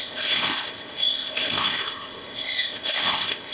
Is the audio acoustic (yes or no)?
no